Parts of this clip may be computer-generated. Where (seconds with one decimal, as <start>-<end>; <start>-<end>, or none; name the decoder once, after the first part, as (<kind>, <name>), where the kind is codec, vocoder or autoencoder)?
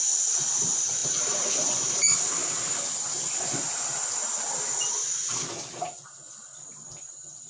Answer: none